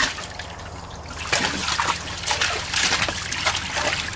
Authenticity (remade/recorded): recorded